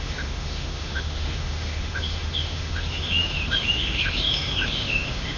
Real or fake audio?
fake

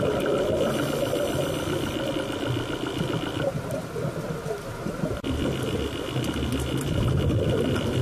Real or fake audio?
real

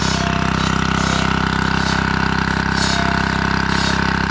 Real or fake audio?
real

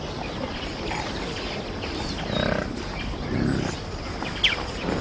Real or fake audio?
real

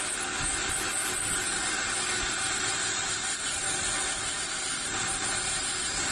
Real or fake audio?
real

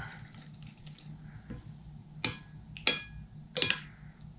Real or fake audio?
real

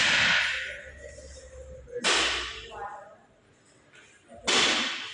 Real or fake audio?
real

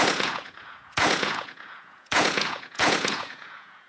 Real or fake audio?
fake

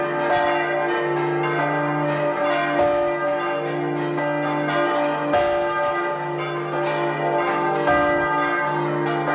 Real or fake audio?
real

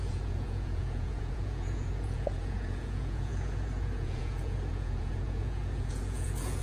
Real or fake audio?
fake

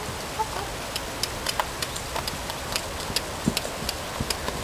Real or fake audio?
real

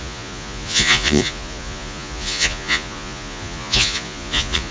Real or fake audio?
fake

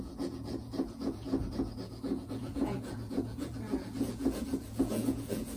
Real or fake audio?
fake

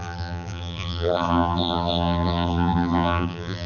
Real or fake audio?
fake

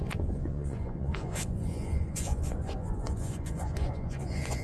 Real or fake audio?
fake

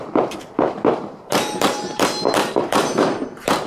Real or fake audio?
fake